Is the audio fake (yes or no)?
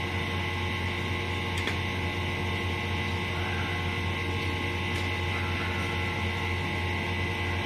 no